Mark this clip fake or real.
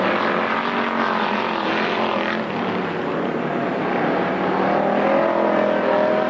real